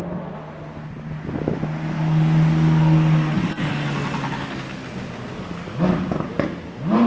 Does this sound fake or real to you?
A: real